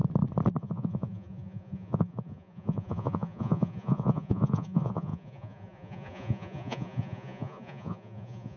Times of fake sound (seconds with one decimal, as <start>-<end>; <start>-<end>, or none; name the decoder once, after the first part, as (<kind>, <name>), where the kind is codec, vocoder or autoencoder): 0.6-8.6 (vocoder, Vocos)